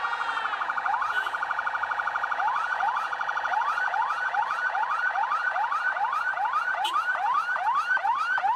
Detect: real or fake fake